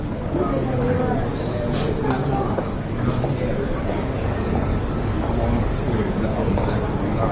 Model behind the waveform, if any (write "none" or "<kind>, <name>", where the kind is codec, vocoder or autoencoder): codec, DAC